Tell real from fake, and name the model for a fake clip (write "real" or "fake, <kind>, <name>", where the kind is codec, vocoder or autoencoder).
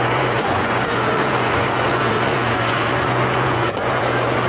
fake, vocoder, Vocos